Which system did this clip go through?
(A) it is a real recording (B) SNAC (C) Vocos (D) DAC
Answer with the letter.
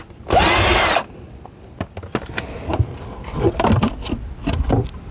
A